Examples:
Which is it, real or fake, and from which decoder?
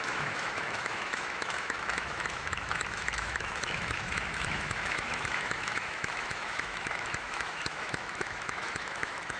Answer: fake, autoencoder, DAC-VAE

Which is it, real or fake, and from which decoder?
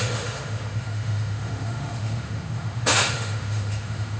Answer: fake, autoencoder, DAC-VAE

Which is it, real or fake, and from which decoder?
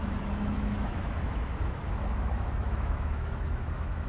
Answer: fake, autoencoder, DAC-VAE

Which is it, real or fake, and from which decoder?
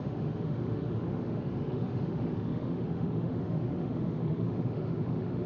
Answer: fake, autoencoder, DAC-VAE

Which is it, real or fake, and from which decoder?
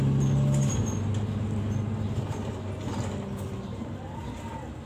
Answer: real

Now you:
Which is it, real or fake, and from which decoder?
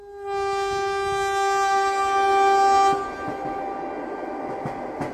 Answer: real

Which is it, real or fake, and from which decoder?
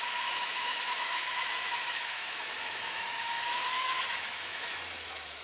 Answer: fake, autoencoder, DAC-VAE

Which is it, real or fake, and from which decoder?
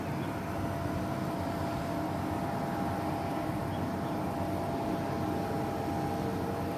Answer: real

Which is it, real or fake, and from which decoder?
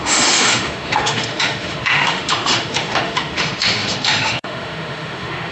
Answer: fake, autoencoder, DAC-VAE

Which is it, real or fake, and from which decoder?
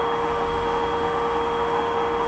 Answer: fake, autoencoder, DAC-VAE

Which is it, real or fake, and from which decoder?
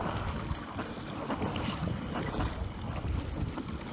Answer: real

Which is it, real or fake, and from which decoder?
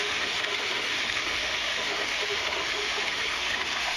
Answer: fake, autoencoder, DAC-VAE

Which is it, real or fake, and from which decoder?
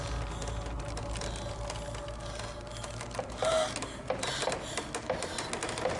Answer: real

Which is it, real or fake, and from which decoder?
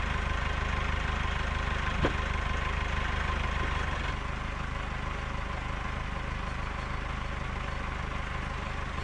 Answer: real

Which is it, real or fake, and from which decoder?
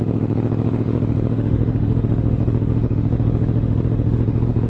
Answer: fake, autoencoder, DAC-VAE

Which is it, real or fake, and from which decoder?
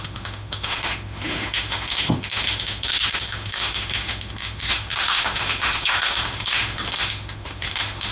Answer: fake, autoencoder, DAC-VAE